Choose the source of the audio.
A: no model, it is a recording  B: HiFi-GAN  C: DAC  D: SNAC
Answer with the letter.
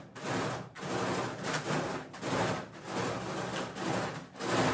A